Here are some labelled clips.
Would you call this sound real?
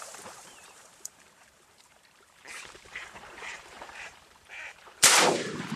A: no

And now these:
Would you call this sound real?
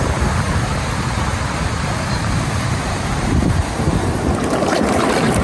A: no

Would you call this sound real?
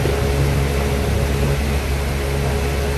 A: yes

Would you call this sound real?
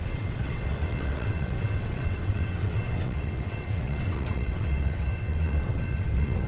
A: no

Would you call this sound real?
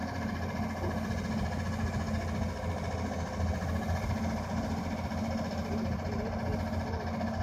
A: yes